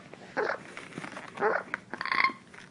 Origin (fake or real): real